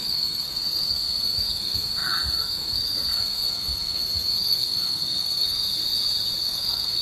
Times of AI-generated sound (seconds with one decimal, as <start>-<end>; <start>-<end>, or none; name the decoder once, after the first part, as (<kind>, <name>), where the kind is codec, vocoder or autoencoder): 0.0-5.6 (codec, SNAC); 6.4-7.0